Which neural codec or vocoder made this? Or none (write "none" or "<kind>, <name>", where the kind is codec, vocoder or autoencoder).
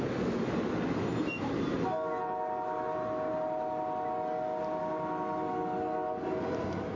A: none